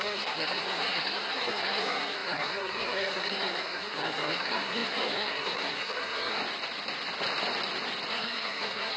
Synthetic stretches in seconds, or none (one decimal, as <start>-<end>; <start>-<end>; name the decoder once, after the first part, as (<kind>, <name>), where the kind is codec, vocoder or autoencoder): 0.0-6.4 (codec, SNAC); 8.1-9.0